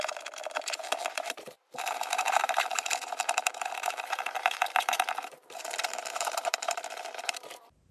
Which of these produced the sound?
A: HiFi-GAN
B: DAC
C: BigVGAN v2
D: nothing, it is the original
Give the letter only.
C